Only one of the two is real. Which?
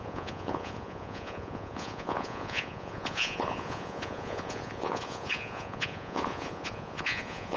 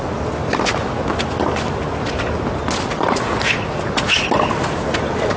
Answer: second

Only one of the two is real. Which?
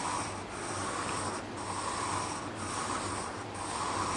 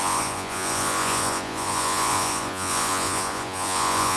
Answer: first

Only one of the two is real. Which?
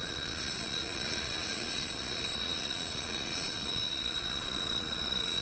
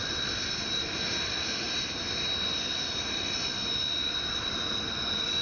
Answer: second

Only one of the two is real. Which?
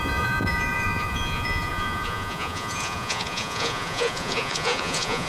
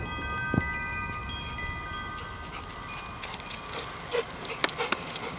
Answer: second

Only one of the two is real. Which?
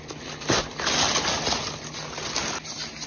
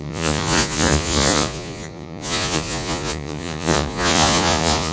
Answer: first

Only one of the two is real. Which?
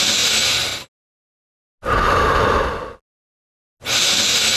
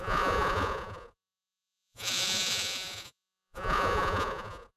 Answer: first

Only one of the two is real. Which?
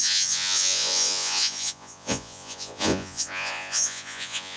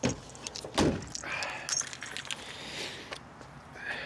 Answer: second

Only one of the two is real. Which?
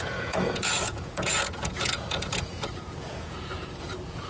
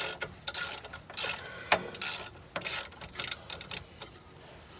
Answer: second